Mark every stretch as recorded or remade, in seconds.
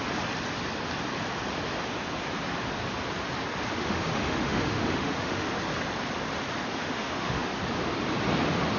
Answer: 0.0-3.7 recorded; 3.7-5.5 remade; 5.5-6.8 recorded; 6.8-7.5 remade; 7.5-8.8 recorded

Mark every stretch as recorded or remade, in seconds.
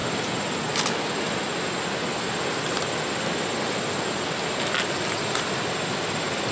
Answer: 0.0-6.5 recorded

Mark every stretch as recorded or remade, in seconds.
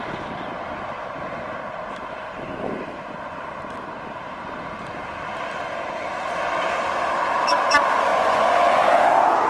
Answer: 0.0-8.1 recorded; 8.1-9.0 remade; 9.0-9.5 recorded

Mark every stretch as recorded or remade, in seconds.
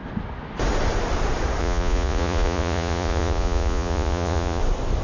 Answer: 0.0-1.6 recorded; 1.6-4.6 remade; 4.6-5.0 recorded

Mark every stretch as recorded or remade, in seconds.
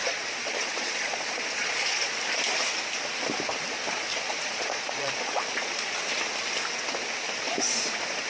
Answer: 0.0-2.1 remade; 2.1-4.1 recorded; 4.1-6.1 remade; 6.1-8.3 recorded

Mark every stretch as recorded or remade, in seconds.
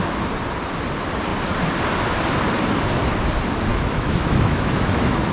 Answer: 0.0-3.7 recorded; 3.7-5.3 remade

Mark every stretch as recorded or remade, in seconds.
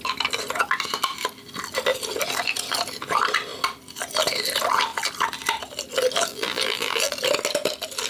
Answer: 0.0-6.3 recorded; 6.3-7.1 remade; 7.1-8.1 recorded